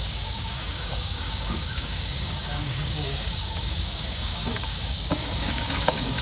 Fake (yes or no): yes